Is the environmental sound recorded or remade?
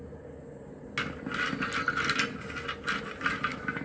recorded